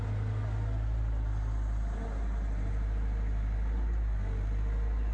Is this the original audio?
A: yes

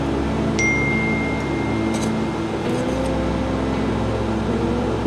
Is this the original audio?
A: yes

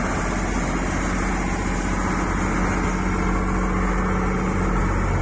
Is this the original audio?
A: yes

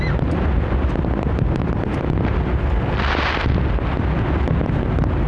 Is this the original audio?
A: yes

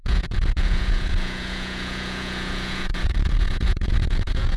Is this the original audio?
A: no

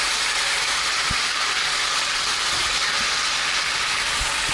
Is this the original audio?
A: yes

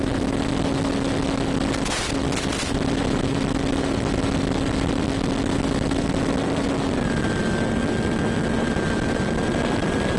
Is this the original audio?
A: yes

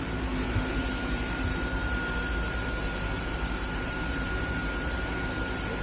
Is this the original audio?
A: no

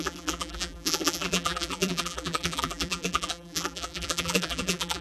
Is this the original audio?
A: no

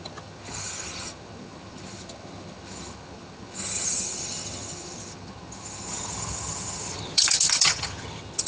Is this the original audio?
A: no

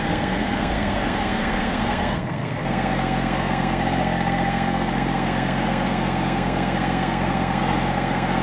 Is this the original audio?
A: no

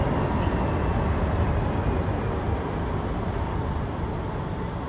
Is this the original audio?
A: yes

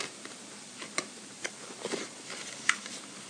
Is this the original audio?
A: no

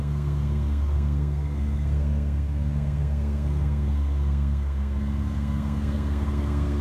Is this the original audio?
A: no